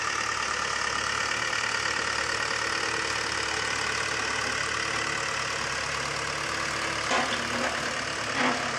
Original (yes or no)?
yes